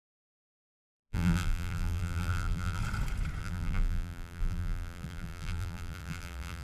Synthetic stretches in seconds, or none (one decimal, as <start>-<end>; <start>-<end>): 0.0-2.8; 3.4-6.6